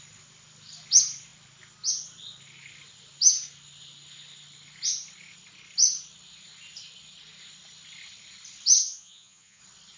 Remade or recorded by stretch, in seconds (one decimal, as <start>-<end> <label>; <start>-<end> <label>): 0.0-8.8 recorded; 8.8-9.6 remade; 9.6-10.0 recorded